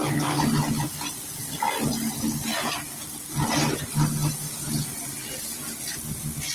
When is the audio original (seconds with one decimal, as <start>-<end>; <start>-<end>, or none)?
0.0-6.5